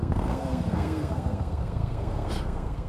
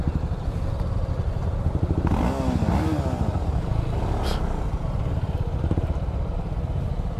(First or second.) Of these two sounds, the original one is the second